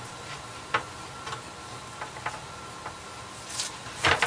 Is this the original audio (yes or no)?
yes